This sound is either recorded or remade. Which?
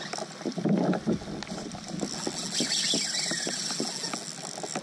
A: recorded